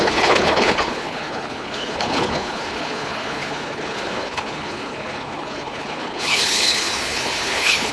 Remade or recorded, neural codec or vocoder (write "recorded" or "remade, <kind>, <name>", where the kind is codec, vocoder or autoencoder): remade, codec, HILCodec